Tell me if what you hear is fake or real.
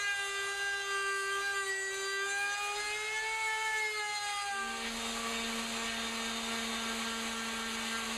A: real